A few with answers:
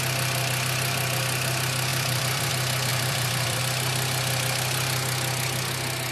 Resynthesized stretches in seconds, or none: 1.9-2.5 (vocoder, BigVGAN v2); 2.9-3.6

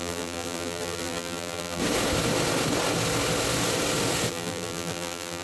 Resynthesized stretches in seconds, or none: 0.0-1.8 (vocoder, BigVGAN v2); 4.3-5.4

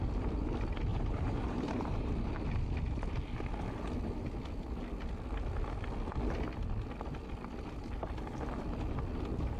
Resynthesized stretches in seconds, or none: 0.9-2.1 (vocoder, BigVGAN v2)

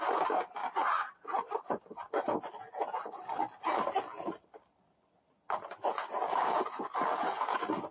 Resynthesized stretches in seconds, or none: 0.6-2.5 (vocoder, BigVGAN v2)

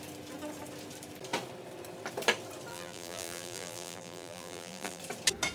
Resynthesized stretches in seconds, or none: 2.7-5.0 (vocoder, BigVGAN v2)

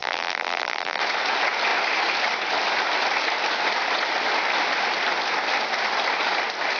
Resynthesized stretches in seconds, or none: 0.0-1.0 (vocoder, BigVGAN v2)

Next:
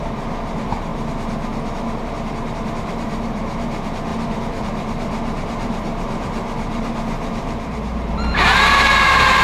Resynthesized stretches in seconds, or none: 0.0-0.9 (vocoder, BigVGAN v2); 2.0-9.4